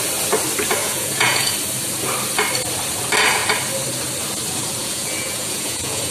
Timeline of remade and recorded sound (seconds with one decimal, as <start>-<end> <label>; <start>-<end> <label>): 0.0-0.8 recorded; 0.8-1.5 remade; 1.5-4.8 recorded; 4.8-6.1 remade